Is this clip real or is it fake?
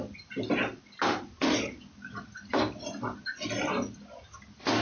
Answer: real